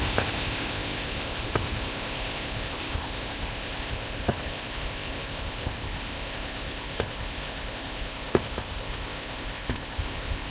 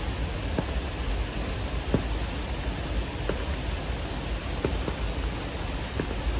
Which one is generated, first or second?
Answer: first